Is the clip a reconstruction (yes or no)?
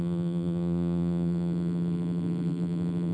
yes